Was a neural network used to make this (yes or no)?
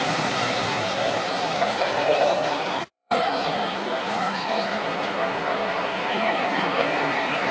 yes